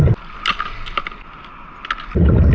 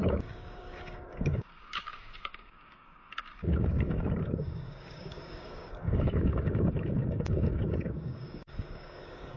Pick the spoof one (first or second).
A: second